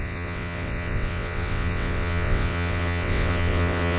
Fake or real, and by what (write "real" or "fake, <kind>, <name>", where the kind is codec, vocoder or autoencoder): fake, vocoder, WaveNeXt